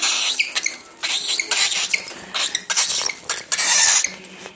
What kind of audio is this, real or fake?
real